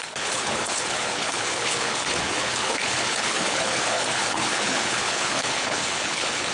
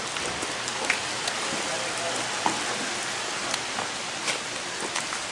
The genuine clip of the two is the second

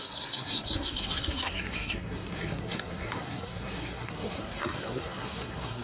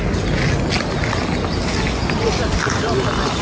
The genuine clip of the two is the second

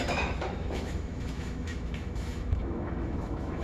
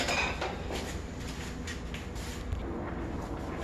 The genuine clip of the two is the second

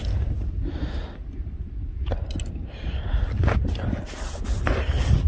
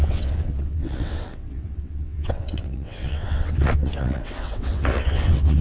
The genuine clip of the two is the first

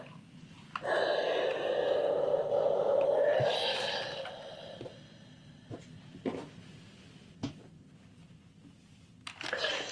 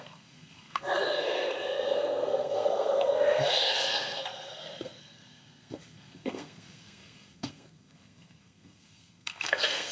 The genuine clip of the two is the first